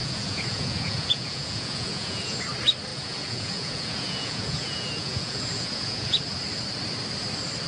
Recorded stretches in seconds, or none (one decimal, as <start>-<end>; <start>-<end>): 2.4-2.9; 6.2-7.7